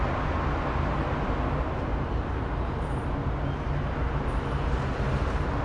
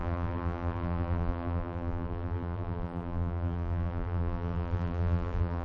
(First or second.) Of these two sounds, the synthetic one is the second